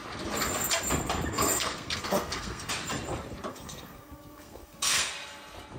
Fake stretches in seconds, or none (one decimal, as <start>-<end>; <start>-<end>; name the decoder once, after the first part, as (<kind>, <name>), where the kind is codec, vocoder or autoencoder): 1.3-2.7 (codec, SNAC); 3.5-5.1